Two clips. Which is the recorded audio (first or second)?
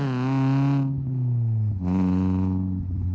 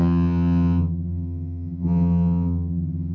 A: first